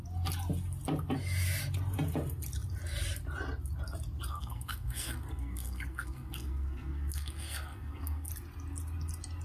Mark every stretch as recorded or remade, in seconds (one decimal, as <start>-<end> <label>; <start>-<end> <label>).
0.0-4.3 recorded; 4.3-8.3 remade; 8.3-9.4 recorded